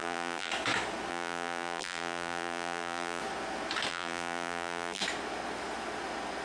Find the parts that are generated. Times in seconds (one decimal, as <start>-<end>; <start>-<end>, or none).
0.0-0.5; 1.1-3.2; 3.9-5.0